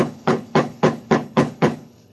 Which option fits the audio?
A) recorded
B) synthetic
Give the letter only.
B